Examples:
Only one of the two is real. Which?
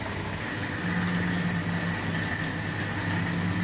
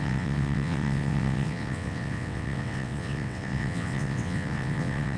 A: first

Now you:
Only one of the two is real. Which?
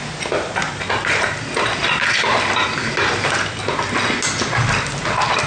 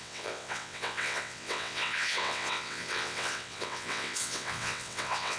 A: first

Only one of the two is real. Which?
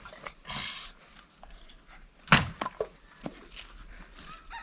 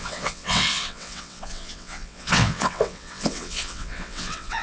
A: first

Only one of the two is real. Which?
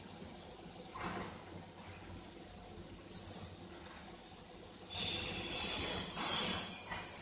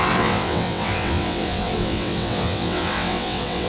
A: first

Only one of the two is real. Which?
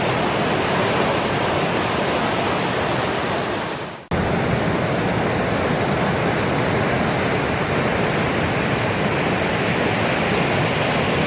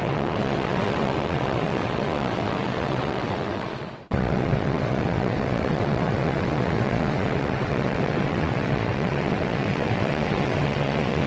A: first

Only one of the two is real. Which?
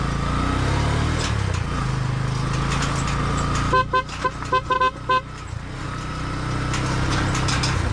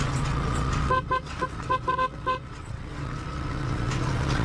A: first